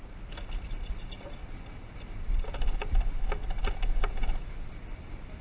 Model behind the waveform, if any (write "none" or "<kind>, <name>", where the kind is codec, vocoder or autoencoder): none